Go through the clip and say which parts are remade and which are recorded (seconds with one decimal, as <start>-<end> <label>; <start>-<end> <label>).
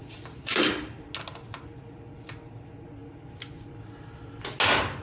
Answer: 0.0-1.1 remade; 1.1-5.0 recorded